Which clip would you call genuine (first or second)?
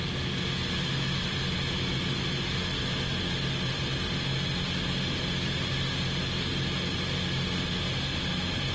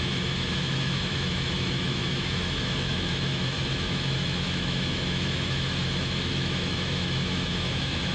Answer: first